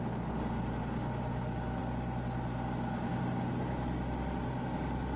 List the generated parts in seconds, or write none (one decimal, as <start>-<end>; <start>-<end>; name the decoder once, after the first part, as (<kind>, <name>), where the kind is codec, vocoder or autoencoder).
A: none